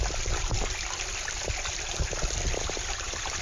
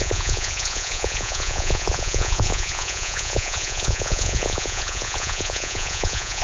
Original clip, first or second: first